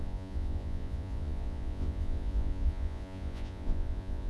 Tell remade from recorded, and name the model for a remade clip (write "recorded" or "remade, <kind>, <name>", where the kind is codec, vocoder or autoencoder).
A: remade, vocoder, Vocos